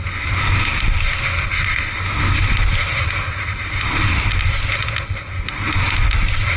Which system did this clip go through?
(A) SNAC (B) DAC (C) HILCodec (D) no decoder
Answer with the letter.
D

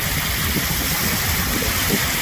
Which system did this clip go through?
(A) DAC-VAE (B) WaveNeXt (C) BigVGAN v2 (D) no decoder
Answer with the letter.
D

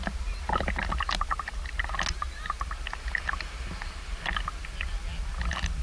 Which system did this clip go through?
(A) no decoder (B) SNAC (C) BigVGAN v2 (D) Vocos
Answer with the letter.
A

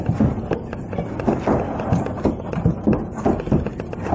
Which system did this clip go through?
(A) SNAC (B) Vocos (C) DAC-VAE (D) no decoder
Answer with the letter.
D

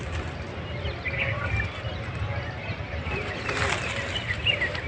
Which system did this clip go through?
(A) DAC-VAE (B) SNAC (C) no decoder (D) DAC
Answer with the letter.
C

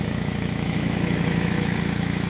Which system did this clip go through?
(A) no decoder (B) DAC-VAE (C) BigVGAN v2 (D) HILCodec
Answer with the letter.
B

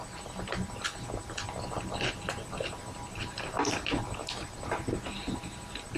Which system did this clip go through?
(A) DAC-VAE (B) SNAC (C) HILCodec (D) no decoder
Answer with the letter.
D